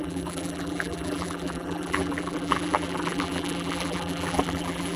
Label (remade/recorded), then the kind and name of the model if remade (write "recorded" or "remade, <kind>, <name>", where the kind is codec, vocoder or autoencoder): remade, vocoder, BigVGAN v2